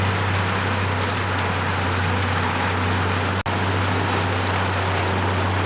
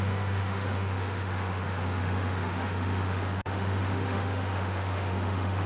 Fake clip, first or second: second